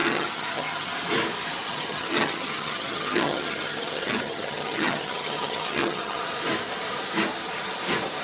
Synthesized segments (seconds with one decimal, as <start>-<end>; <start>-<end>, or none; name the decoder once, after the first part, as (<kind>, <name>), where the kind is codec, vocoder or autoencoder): 0.0-0.9 (vocoder, HiFi-GAN); 1.6-6.2